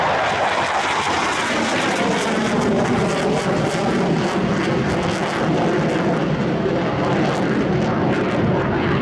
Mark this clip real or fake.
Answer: real